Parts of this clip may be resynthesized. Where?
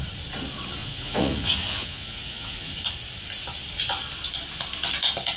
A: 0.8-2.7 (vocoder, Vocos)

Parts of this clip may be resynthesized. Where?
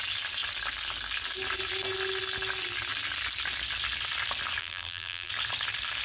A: 4.6-5.3 (vocoder, BigVGAN v2)